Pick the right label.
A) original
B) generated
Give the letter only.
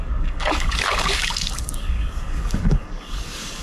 B